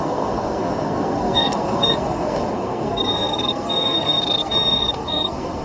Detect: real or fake fake